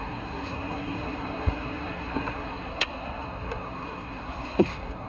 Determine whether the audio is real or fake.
fake